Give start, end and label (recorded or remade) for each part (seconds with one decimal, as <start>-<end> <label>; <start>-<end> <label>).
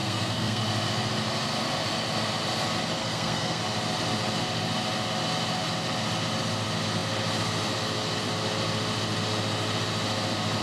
0.0-0.6 remade; 0.6-3.0 recorded; 3.0-3.6 remade; 3.6-10.6 recorded